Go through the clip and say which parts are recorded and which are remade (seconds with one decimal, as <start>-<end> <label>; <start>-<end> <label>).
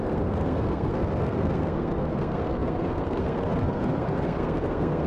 0.0-5.1 remade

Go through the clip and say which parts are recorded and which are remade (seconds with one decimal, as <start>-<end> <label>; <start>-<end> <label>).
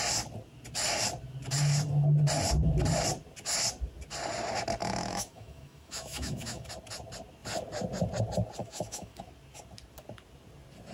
0.0-4.8 recorded; 4.8-6.7 remade; 6.7-8.6 recorded; 8.6-9.2 remade; 9.2-10.9 recorded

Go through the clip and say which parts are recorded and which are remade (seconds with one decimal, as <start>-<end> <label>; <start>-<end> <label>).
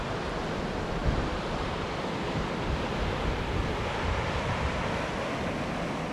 0.0-6.1 recorded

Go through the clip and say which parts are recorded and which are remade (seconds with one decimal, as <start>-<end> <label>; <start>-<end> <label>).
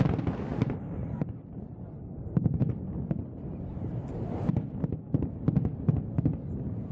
0.0-0.5 recorded; 0.5-1.5 remade; 1.5-2.6 recorded; 2.6-3.1 remade; 3.1-3.5 recorded; 3.5-4.5 remade; 4.5-6.9 recorded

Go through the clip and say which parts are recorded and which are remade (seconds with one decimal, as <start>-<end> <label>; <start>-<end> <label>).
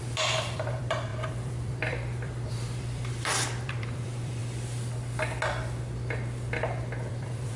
0.0-4.4 remade; 4.4-7.1 recorded; 7.1-7.6 remade